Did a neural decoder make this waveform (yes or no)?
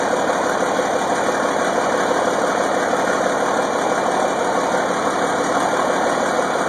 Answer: no